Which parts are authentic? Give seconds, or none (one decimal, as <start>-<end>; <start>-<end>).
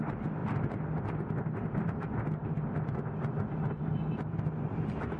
0.0-5.2